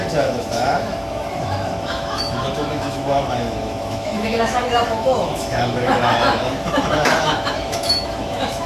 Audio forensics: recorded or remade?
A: remade